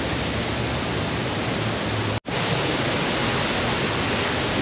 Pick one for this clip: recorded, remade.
recorded